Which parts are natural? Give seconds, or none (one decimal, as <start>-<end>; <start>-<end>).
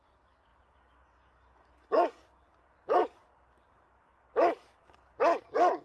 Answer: none